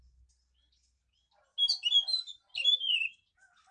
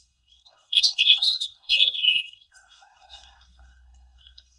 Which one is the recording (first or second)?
first